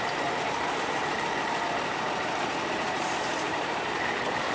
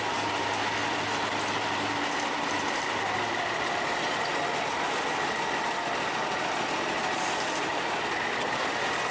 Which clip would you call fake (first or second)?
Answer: first